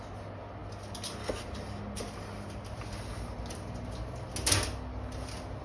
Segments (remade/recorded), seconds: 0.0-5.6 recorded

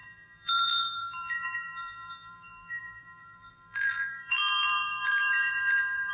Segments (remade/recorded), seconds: 0.0-6.1 remade

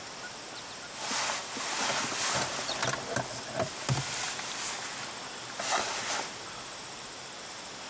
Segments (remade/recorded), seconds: 0.0-7.9 recorded

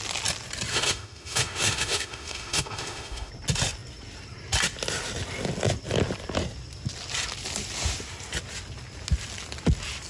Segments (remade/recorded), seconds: 0.0-0.7 recorded; 0.7-3.3 remade; 3.3-10.1 recorded

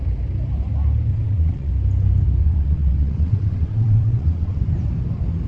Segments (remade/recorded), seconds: 0.0-1.1 recorded; 1.1-1.7 remade; 1.7-2.4 recorded; 2.4-4.6 remade; 4.6-5.5 recorded

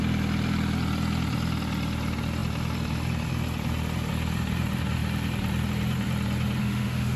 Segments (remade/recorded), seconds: 0.0-6.6 recorded; 6.6-7.2 remade

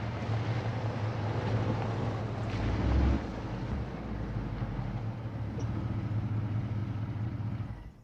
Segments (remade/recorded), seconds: 0.0-8.0 recorded

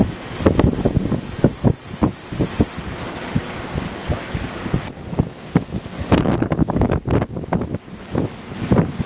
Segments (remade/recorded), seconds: 0.0-2.9 recorded; 2.9-7.1 remade; 7.1-9.1 recorded